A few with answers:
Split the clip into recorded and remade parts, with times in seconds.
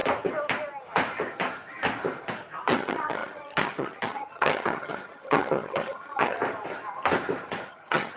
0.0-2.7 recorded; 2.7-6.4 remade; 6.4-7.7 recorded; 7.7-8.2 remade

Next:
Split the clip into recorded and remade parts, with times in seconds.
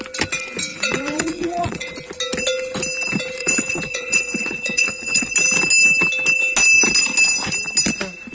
0.0-0.7 recorded; 0.7-1.9 remade; 1.9-3.4 recorded; 3.4-5.3 remade; 5.3-8.3 recorded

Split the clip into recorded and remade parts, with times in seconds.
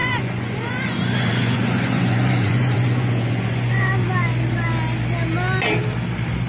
0.0-3.9 remade; 3.9-6.5 recorded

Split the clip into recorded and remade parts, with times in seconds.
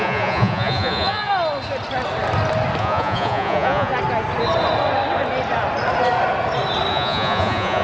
0.0-1.3 remade; 1.3-2.8 recorded; 2.8-3.9 remade; 3.9-6.9 recorded; 6.9-7.8 remade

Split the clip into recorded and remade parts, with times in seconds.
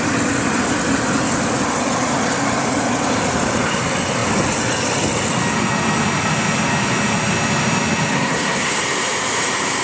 0.0-8.1 recorded; 8.1-8.8 remade; 8.8-9.8 recorded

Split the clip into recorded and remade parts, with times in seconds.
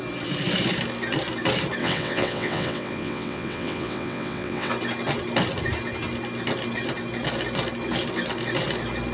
0.0-1.8 recorded; 1.8-4.7 remade; 4.7-9.1 recorded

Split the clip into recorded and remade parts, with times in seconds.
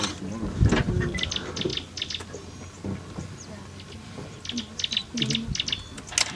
0.0-6.4 recorded